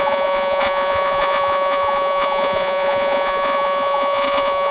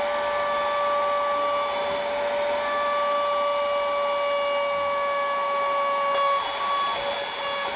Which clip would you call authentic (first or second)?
second